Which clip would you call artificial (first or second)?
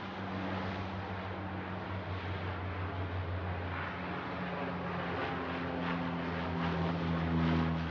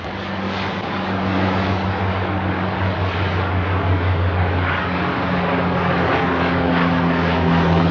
second